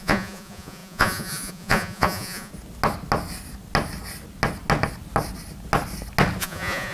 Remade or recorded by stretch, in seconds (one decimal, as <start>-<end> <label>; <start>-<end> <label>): 0.0-2.5 remade; 2.5-6.4 recorded; 6.4-6.9 remade